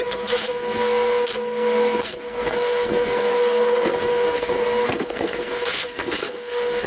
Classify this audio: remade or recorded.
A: remade